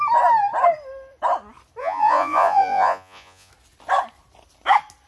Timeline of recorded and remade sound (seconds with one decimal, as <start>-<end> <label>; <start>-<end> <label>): 0.0-1.8 recorded; 1.8-3.5 remade; 3.5-5.1 recorded